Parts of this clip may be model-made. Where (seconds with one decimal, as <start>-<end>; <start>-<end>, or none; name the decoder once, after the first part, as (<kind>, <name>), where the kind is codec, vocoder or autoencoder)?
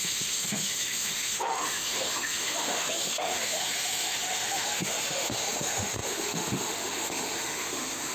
0.0-8.1 (autoencoder, DAC-VAE)